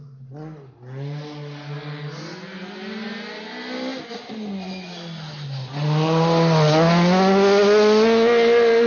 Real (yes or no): yes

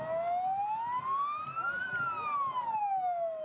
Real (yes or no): yes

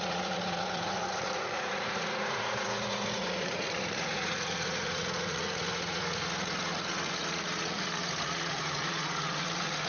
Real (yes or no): no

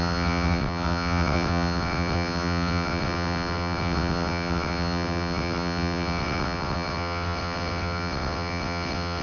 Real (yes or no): no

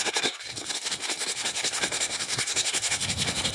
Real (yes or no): no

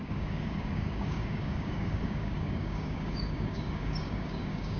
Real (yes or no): no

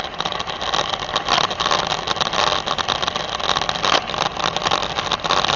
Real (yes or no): yes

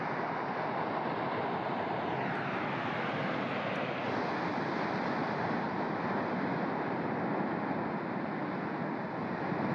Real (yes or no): yes